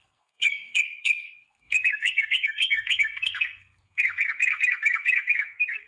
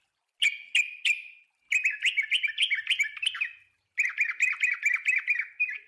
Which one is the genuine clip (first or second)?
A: second